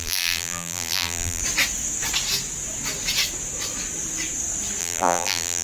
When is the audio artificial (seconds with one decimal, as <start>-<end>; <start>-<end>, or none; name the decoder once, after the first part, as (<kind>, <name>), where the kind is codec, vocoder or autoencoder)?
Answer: 0.0-1.4 (vocoder, BigVGAN v2); 4.8-5.6